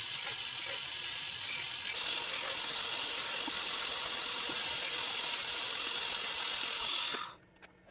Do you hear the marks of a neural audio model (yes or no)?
no